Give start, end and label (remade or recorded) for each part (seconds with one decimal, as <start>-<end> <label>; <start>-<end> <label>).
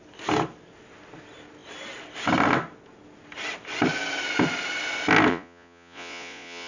0.0-5.3 recorded; 5.3-6.7 remade